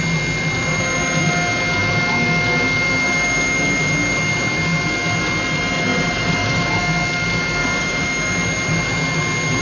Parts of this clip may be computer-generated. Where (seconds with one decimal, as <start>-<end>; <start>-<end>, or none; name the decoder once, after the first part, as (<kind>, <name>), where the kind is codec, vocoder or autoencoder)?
5.9-6.8 (vocoder, BigVGAN v2); 7.6-8.1